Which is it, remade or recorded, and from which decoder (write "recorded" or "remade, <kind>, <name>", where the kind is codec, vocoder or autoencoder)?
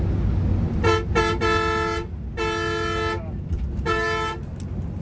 recorded